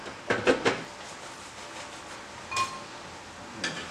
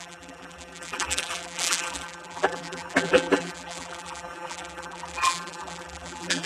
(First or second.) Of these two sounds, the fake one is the second